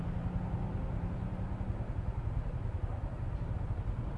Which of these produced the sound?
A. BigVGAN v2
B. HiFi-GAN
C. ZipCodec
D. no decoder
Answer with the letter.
D